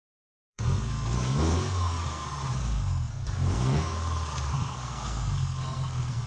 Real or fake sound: fake